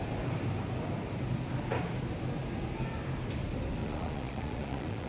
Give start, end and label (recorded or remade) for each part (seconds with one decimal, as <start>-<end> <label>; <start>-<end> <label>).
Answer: 0.0-3.8 recorded; 3.8-5.1 remade